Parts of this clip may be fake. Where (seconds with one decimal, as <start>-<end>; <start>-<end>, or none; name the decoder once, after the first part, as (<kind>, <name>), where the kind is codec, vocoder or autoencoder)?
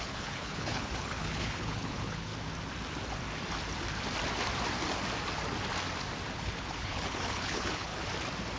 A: 0.0-2.3 (codec, HILCodec); 6.3-7.9